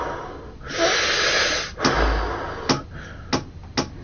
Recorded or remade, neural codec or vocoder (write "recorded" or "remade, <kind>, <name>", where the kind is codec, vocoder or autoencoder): recorded